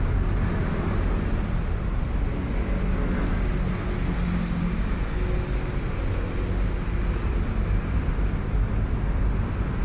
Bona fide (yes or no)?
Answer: yes